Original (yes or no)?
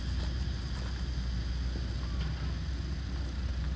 no